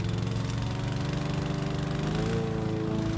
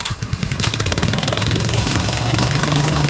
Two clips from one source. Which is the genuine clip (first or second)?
first